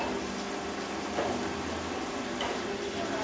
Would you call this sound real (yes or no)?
yes